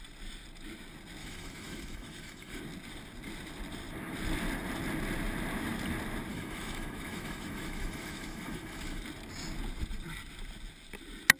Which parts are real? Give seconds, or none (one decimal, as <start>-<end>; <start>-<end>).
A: 0.0-1.2; 2.6-6.3; 9.0-11.4